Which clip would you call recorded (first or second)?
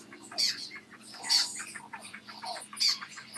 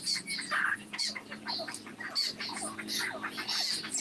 second